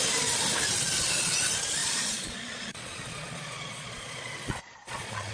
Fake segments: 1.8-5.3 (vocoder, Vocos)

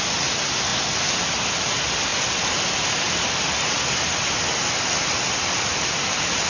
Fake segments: none

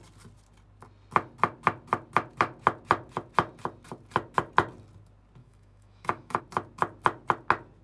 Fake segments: 5.4-6.4 (autoencoder, DAC-VAE)

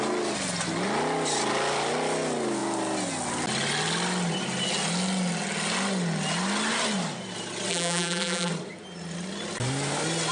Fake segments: 7.7-8.5 (vocoder, BigVGAN v2)

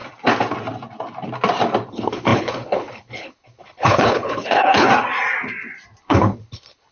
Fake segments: 1.9-4.9 (codec, HILCodec); 6.0-6.9

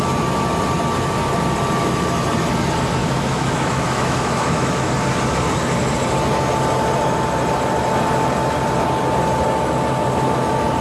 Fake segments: 3.0-4.9 (autoencoder, DAC-VAE)

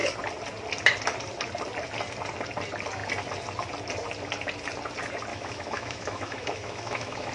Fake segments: 5.3-7.3 (autoencoder, DAC-VAE)

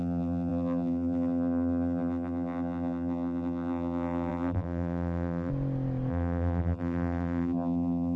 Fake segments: 0.0-5.5 (vocoder, BigVGAN v2); 6.1-8.2